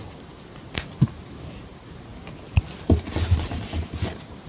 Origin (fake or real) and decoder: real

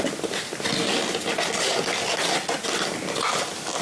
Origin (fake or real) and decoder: real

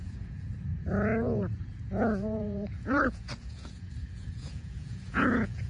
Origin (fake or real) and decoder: fake, vocoder, Vocos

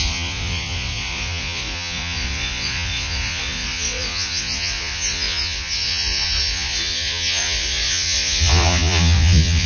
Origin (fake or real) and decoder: fake, vocoder, Vocos